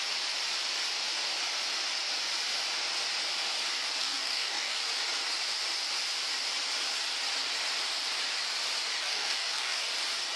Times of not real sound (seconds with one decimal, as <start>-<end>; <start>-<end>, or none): 4.0-4.8; 9.0-9.9